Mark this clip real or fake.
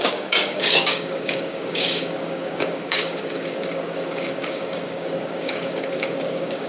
fake